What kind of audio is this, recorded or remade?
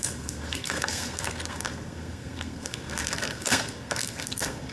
remade